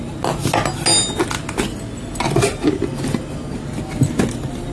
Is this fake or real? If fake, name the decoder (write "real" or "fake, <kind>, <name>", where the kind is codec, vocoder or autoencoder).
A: real